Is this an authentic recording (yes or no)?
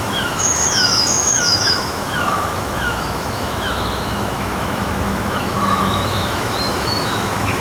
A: no